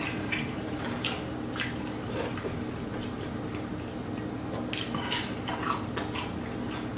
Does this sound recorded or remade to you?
recorded